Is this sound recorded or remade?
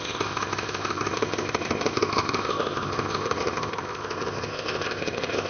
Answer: remade